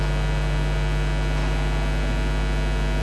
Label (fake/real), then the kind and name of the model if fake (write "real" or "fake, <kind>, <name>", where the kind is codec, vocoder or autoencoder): real